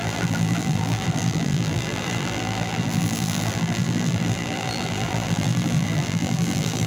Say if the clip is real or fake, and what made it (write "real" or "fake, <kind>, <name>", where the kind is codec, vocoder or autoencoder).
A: fake, vocoder, BigVGAN v2